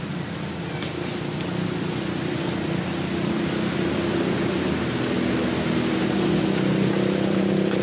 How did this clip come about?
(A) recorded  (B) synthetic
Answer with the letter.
A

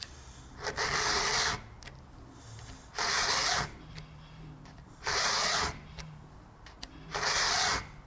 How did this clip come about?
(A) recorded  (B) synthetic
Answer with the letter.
A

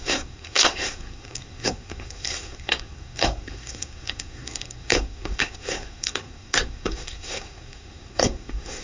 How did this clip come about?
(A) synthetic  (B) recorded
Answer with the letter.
A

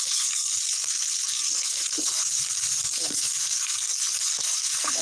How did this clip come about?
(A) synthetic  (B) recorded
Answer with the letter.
A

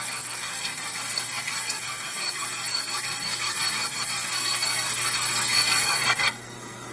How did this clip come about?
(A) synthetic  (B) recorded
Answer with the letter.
A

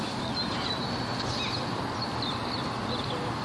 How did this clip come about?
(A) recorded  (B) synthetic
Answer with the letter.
A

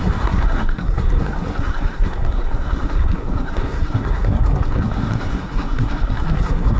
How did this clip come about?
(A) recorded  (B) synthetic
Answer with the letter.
B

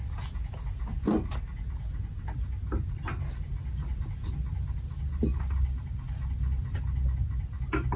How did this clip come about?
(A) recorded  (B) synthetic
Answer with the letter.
A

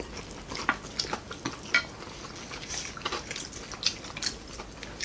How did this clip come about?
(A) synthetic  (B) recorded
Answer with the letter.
B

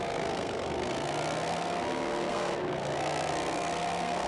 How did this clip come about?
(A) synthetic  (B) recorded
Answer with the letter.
A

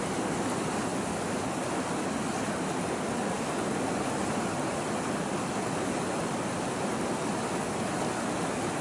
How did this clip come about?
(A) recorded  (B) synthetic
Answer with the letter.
A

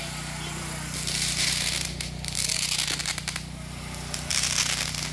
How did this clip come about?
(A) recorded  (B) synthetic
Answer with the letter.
A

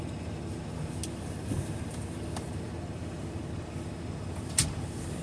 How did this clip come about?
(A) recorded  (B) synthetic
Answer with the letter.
A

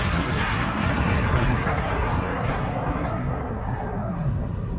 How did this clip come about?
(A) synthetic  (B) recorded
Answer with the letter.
A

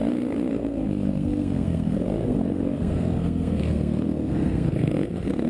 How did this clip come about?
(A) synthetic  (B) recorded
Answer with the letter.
A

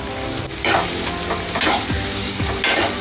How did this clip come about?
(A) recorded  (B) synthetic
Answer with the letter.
A